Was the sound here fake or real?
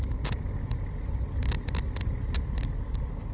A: real